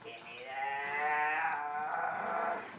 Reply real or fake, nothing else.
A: real